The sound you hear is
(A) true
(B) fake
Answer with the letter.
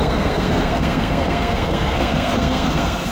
B